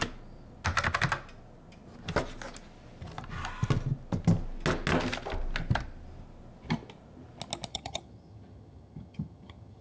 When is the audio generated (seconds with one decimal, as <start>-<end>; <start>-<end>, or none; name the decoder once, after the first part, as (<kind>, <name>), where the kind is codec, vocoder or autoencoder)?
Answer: 7.7-9.8 (vocoder, HiFi-GAN)